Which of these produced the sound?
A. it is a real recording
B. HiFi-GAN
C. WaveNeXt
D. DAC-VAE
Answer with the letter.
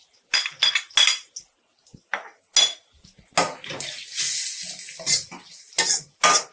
A